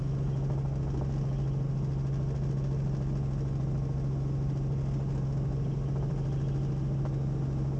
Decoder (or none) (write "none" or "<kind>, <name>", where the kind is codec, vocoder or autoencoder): none